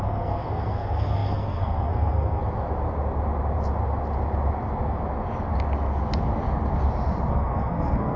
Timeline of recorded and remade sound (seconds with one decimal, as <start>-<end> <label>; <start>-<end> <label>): 0.0-2.4 remade; 2.4-7.3 recorded; 7.3-8.2 remade